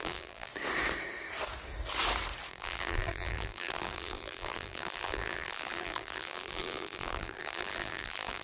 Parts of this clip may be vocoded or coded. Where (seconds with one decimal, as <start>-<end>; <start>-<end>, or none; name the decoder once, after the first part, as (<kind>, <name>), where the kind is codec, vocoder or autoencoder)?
0.0-0.5 (vocoder, BigVGAN v2); 2.5-8.4